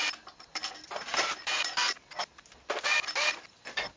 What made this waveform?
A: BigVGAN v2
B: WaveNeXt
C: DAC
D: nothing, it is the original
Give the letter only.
D